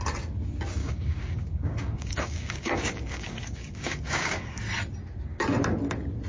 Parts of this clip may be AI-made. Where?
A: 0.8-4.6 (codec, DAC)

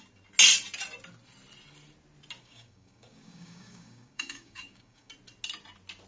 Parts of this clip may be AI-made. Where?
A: 2.4-5.1 (codec, DAC)

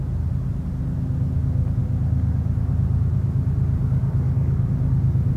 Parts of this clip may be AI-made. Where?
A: 3.8-4.7 (codec, DAC)

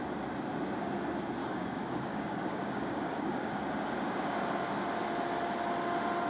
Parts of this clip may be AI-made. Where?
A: 1.4-3.5 (codec, DAC)

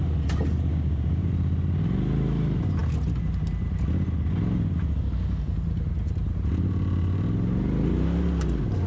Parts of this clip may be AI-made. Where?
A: 0.7-1.3 (codec, DAC)

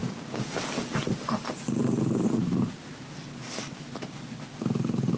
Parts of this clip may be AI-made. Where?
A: 0.0-0.6 (codec, DAC)